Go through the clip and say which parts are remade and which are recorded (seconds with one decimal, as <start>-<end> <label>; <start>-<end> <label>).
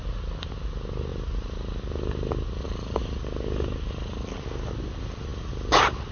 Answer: 0.0-6.1 recorded